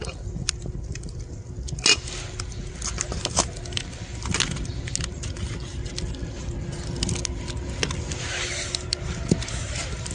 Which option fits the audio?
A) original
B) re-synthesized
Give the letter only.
A